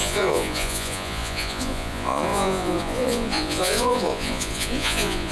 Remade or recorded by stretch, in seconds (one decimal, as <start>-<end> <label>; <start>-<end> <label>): 0.0-5.3 remade